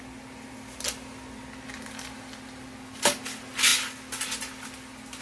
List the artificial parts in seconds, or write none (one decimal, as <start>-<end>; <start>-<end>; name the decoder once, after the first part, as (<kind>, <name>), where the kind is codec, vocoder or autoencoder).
none